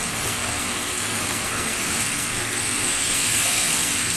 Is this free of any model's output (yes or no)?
no